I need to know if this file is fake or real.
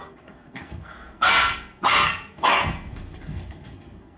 fake